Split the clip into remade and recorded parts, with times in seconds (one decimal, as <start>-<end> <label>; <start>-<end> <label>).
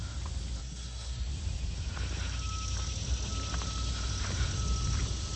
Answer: 0.0-0.6 recorded; 0.6-1.3 remade; 1.3-5.4 recorded